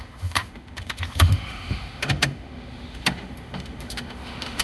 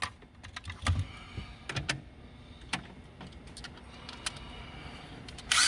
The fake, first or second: first